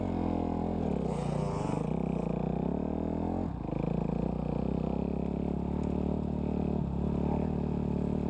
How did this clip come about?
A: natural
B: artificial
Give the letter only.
A